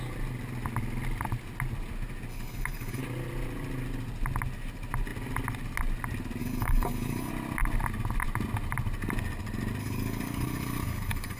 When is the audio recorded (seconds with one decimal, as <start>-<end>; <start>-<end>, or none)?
0.0-2.3; 3.0-6.4; 7.3-9.8